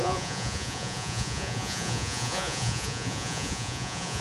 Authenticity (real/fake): fake